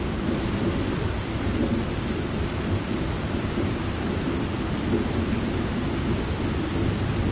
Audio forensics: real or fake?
fake